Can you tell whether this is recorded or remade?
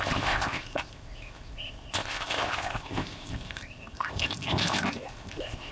remade